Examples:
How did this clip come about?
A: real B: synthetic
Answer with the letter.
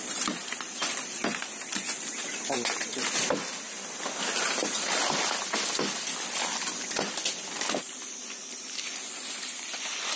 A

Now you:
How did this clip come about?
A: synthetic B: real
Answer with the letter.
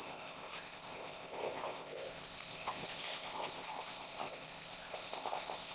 A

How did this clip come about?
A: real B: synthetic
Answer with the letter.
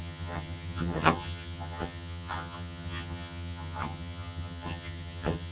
B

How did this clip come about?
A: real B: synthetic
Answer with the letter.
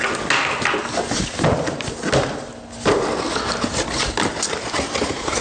A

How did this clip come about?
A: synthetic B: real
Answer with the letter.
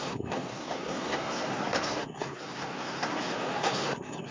A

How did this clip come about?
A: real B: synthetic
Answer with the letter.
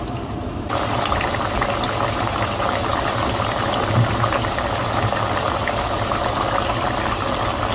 A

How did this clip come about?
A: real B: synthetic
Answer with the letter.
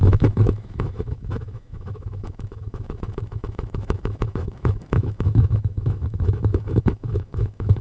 B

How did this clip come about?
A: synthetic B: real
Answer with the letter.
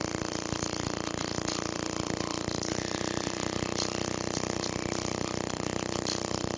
B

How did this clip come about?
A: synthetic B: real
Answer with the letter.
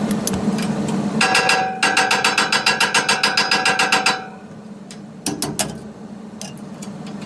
B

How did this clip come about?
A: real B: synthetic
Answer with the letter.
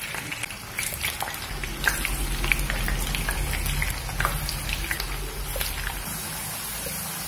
A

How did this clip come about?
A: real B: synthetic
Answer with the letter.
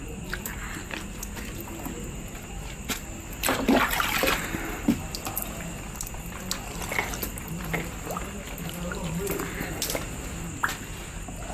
A